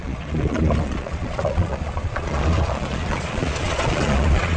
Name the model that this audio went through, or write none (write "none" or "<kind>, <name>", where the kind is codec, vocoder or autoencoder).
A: vocoder, Vocos